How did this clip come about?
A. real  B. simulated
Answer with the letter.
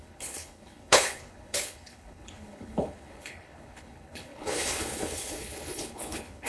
B